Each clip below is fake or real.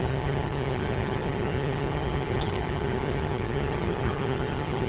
fake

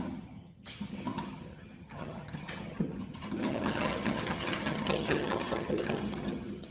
fake